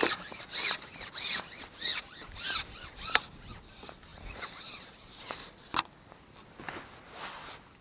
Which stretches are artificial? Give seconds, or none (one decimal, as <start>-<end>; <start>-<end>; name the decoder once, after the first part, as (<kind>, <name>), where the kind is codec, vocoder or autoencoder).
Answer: 1.9-2.9 (vocoder, BigVGAN v2); 4.1-5.2

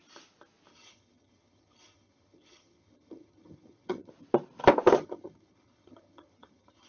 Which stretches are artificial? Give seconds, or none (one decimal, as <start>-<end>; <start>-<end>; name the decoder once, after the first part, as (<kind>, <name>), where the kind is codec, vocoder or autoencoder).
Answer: 0.7-4.1 (vocoder, HiFi-GAN); 5.0-6.9

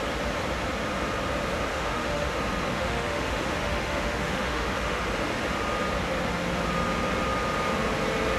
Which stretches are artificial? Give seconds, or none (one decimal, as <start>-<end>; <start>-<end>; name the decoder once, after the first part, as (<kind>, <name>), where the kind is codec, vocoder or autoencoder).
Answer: 1.7-2.3 (autoencoder, DAC-VAE); 2.7-5.0